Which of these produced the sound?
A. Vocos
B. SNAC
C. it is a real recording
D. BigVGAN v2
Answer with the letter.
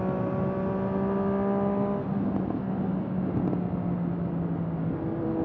C